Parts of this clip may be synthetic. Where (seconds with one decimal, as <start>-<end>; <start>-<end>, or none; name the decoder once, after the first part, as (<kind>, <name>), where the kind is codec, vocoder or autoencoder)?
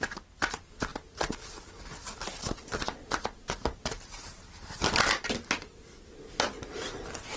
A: none